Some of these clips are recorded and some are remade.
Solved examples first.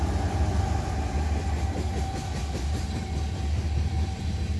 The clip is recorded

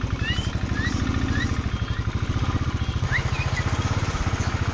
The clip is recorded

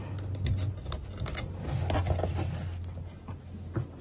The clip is recorded